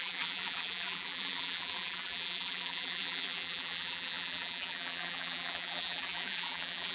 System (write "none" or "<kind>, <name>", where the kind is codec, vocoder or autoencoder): vocoder, BigVGAN v2